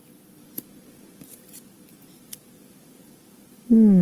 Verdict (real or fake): real